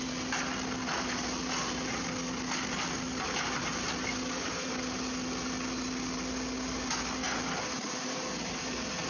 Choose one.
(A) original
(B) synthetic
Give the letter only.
A